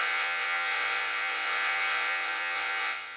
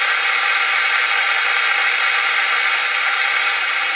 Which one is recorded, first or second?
second